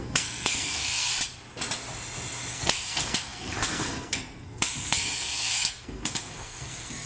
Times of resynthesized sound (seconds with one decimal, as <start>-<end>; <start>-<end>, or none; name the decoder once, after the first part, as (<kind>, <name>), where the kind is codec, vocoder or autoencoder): 0.0-1.1 (codec, SNAC); 2.5-7.1